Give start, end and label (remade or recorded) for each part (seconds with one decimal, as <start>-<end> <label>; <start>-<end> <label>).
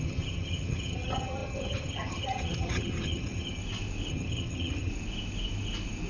0.0-3.6 remade; 3.6-4.1 recorded; 4.1-4.9 remade; 4.9-6.1 recorded